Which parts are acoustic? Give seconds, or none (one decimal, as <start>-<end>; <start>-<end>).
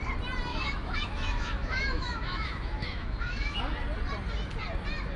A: 0.0-0.5; 3.6-5.2